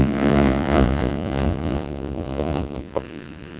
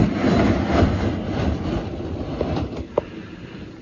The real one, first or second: second